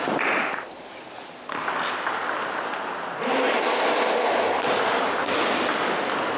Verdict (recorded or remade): recorded